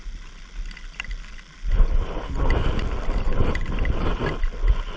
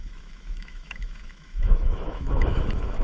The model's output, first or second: second